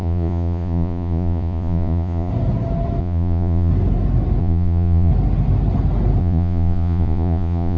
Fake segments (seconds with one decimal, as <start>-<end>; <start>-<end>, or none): 0.0-2.3; 3.0-3.7; 4.4-5.1; 6.2-7.8

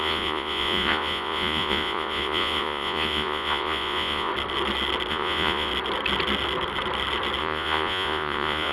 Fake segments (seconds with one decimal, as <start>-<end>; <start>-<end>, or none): 0.0-4.3; 5.1-5.7; 7.4-8.7

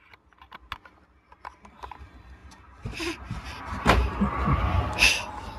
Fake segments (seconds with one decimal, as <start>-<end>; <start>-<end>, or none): 2.4-3.6

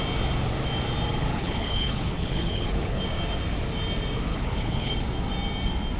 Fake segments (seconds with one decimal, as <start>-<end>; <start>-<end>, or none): 1.3-3.0; 4.3-4.9

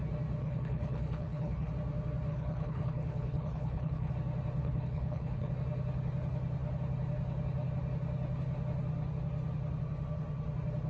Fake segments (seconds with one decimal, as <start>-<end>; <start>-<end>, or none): 0.4-1.7; 2.3-4.1; 4.6-5.5

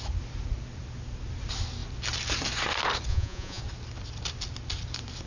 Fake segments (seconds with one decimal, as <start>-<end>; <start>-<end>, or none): 3.1-3.6